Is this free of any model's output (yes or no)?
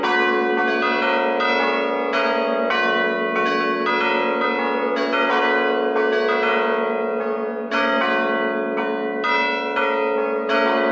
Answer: yes